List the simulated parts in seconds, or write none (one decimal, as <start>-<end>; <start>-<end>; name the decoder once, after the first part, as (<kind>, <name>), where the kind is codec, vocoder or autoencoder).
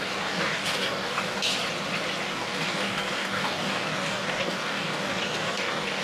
0.0-1.5 (codec, DAC); 2.2-6.0